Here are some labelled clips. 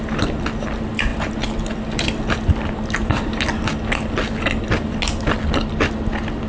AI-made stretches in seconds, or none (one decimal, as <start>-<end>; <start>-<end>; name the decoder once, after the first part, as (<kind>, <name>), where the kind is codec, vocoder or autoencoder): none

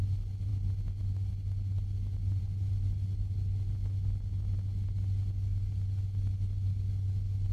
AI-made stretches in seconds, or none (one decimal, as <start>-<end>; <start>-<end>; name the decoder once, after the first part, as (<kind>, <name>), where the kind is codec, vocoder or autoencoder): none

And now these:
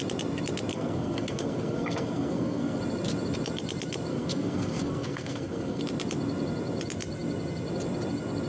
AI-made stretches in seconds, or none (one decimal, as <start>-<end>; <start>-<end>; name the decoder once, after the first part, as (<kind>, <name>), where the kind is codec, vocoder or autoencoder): 0.7-2.8 (codec, SNAC); 4.1-5.8

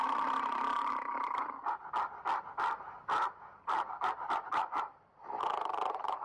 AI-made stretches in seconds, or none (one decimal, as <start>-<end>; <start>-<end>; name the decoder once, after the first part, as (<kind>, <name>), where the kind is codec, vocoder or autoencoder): 3.5-6.2 (vocoder, BigVGAN v2)

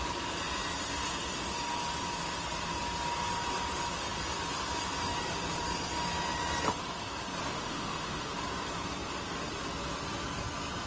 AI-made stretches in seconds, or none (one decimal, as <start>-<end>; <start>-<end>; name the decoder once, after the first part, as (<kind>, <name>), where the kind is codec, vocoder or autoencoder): 7.5-8.3 (autoencoder, DAC-VAE)

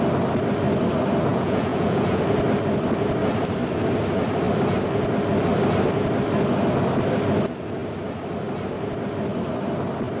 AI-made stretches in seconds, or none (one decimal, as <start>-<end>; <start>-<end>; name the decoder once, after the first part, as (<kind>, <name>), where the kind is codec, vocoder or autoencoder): 1.3-2.2 (vocoder, Vocos)